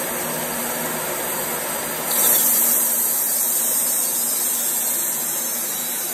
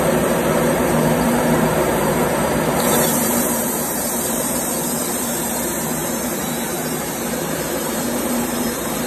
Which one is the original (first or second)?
first